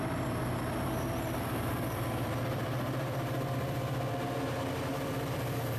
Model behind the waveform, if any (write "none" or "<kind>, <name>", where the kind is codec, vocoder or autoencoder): vocoder, BigVGAN v2